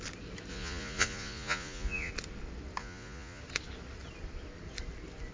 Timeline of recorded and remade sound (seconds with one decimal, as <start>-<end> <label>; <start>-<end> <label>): 0.0-0.5 recorded; 0.5-2.1 remade; 2.1-2.8 recorded; 2.8-3.4 remade; 3.4-5.3 recorded